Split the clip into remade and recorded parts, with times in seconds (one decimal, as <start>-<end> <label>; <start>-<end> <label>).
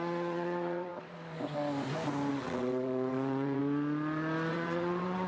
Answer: 0.0-0.9 remade; 0.9-2.3 recorded; 2.3-3.6 remade; 3.6-4.5 recorded; 4.5-5.3 remade